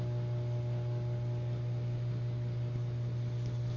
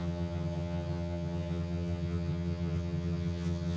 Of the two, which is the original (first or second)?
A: first